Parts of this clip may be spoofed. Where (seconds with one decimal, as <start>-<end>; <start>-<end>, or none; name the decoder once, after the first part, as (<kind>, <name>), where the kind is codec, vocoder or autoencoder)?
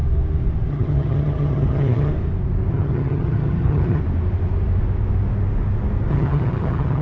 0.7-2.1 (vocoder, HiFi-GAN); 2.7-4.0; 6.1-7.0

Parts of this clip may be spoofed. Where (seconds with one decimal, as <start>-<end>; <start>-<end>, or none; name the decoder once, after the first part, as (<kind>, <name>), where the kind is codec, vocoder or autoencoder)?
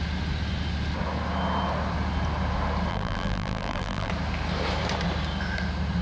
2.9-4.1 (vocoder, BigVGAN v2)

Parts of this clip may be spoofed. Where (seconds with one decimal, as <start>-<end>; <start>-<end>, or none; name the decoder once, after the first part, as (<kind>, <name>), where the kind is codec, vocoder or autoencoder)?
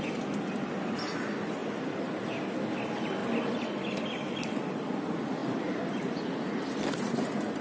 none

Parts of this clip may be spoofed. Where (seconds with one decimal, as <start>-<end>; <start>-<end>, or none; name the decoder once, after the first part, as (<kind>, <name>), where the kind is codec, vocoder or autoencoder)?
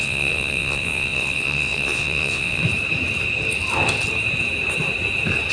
0.0-2.6 (vocoder, WaveNeXt)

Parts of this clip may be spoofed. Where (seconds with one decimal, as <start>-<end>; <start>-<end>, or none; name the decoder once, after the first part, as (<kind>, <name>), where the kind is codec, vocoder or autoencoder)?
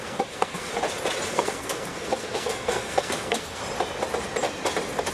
0.0-0.7 (codec, SNAC); 1.3-3.6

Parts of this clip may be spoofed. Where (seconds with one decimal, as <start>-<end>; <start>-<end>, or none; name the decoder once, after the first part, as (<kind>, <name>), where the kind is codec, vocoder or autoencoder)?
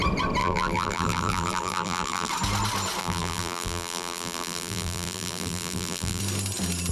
0.4-2.3 (vocoder, BigVGAN v2); 3.0-6.2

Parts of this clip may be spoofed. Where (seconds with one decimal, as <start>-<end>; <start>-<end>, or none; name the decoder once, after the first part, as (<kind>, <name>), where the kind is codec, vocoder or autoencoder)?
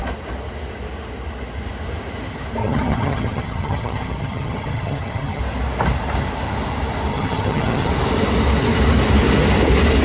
2.6-5.4 (vocoder, HiFi-GAN); 7.1-7.9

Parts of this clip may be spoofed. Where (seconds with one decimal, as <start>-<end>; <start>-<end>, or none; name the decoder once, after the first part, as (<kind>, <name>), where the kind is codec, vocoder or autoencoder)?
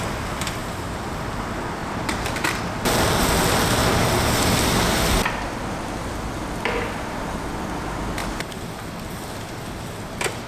0.6-1.1 (vocoder, BigVGAN v2); 1.8-2.6